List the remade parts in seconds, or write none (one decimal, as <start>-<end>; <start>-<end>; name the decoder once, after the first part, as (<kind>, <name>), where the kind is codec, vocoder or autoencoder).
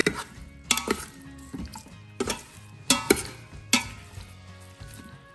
none